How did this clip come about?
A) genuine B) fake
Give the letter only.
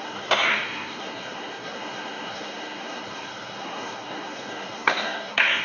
B